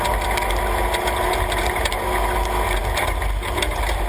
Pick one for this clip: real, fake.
real